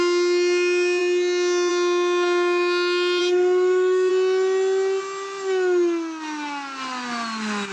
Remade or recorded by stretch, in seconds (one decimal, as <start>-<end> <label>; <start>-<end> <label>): 0.0-3.2 recorded; 3.2-4.1 remade; 4.1-7.7 recorded